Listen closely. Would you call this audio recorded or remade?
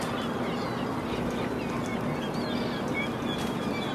recorded